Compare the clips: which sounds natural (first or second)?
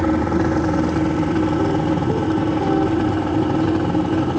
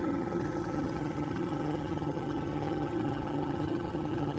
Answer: first